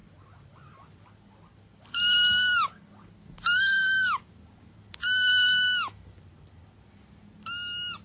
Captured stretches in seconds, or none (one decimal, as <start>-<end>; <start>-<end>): 0.0-8.0